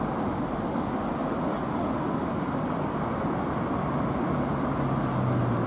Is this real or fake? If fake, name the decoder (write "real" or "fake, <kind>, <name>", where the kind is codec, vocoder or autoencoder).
real